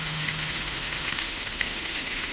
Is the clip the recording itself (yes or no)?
no